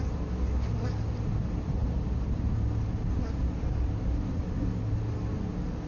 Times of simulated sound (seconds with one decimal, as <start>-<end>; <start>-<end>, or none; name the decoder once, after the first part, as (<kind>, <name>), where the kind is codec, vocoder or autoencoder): none